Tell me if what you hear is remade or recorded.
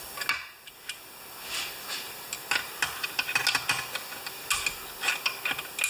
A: recorded